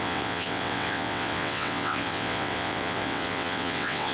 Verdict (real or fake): fake